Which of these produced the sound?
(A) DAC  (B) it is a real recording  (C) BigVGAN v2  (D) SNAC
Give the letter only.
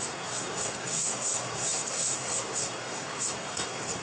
D